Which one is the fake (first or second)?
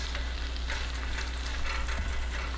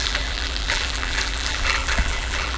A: second